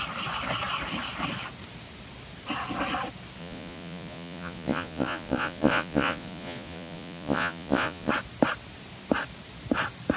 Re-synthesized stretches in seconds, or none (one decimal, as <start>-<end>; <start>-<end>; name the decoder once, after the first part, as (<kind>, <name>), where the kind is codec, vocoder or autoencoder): 3.4-8.1 (vocoder, Vocos)

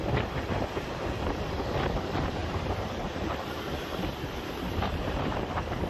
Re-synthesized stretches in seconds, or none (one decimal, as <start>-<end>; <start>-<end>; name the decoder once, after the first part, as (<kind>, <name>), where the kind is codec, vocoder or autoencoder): 0.0-5.9 (vocoder, BigVGAN v2)

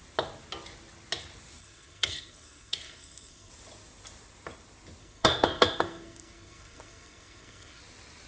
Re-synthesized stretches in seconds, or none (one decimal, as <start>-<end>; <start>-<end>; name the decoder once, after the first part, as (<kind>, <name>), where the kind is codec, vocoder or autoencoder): 1.6-3.5 (codec, SNAC); 5.0-7.8

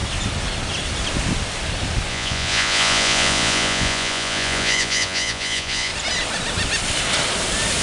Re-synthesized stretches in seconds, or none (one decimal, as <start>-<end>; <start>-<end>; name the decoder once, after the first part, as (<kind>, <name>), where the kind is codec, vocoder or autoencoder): 2.1-5.9 (vocoder, Vocos)

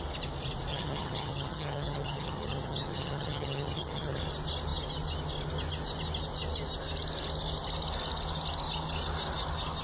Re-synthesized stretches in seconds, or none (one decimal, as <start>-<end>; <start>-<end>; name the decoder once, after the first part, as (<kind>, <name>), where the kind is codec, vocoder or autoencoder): 0.7-4.2 (vocoder, HiFi-GAN)

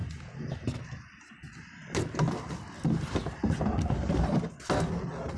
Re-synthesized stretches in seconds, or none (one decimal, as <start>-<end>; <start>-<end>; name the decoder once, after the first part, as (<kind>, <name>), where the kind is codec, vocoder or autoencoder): none